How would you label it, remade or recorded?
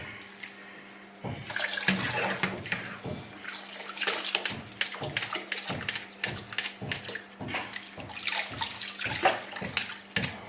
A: recorded